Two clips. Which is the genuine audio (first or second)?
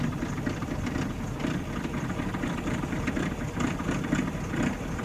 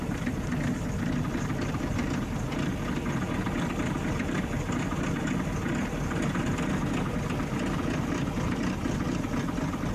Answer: second